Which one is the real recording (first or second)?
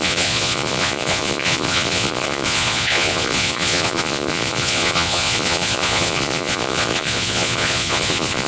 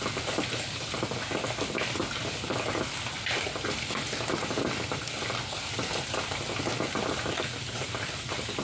second